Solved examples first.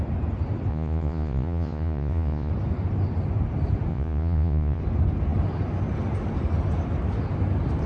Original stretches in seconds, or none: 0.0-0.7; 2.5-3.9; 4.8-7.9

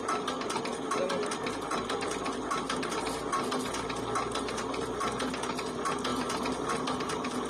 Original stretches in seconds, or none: 0.0-7.5